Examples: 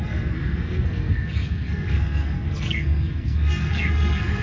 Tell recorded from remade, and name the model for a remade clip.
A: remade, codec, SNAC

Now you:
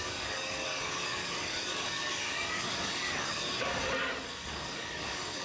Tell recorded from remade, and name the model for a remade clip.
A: remade, codec, DAC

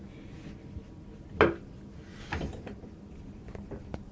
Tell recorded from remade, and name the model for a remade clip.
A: recorded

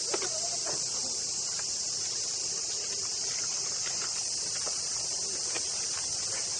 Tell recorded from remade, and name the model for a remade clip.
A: remade, vocoder, BigVGAN v2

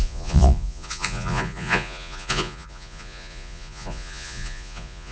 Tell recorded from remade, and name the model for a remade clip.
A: remade, vocoder, Vocos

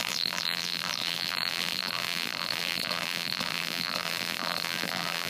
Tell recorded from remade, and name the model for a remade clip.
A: remade, vocoder, BigVGAN v2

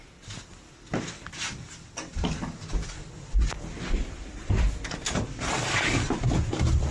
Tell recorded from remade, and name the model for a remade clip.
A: recorded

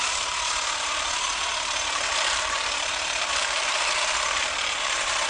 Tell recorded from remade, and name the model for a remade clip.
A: remade, vocoder, BigVGAN v2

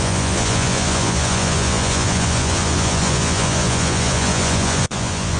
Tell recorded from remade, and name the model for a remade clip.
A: remade, vocoder, Vocos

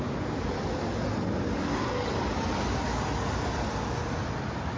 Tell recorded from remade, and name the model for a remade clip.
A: recorded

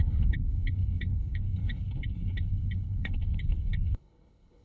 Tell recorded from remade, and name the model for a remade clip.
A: remade, codec, HILCodec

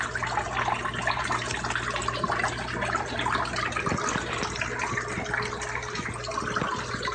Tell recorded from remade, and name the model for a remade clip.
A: recorded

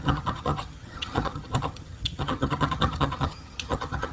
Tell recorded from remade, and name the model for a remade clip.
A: remade, vocoder, HiFi-GAN